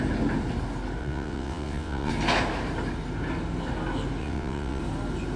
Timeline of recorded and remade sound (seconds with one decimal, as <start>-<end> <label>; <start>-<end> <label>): 0.0-1.0 recorded; 1.0-2.1 remade; 2.1-4.2 recorded; 4.2-4.8 remade; 4.8-5.4 recorded